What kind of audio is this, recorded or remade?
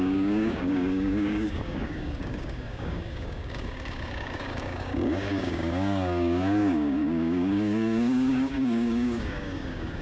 remade